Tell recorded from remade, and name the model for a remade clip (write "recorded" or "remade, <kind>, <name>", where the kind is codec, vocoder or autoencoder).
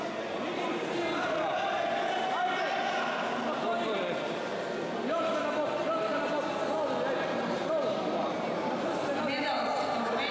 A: recorded